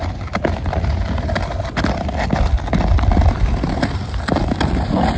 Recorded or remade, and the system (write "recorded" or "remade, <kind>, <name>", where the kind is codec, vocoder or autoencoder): recorded